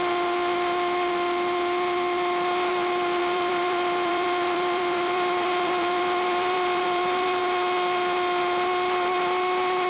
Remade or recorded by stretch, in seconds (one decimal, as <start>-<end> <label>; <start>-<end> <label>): 0.0-3.2 recorded; 3.2-7.4 remade; 7.4-9.9 recorded

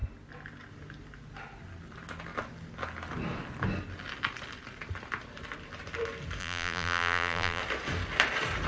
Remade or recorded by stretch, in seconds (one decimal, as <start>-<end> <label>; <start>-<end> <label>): 0.0-6.4 recorded; 6.4-7.6 remade; 7.6-8.7 recorded